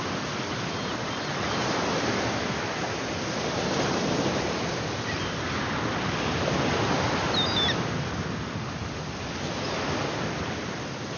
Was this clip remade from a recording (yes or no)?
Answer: no